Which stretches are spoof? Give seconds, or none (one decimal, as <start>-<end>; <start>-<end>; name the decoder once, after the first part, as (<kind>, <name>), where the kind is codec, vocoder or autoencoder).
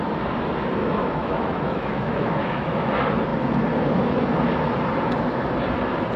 0.8-2.9 (autoencoder, DAC-VAE)